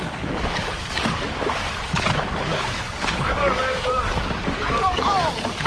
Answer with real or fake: fake